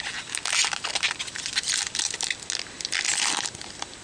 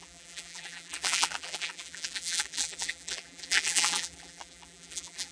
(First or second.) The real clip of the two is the first